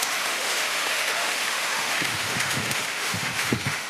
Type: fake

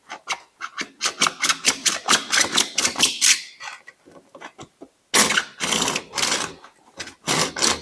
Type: real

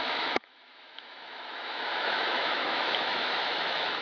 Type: fake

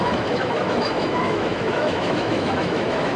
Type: fake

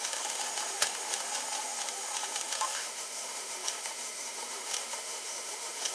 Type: fake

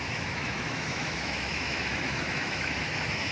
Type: fake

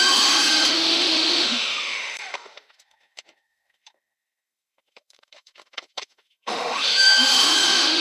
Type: fake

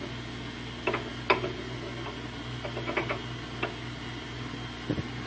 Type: real